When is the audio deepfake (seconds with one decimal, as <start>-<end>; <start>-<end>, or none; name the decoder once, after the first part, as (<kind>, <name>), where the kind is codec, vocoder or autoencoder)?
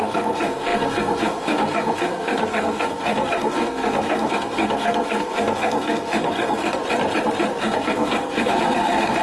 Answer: 0.0-6.8 (codec, SNAC); 7.6-9.2